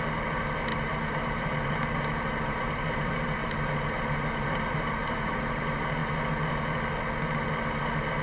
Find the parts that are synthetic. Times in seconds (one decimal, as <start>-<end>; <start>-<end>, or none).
0.7-5.6